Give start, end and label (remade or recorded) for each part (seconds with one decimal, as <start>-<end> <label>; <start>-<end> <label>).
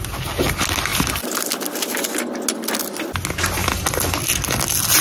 0.0-5.0 recorded